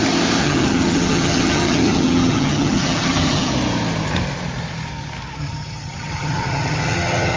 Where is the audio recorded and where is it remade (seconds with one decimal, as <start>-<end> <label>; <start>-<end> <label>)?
0.0-0.4 recorded; 0.4-3.5 remade; 3.5-5.4 recorded; 5.4-7.4 remade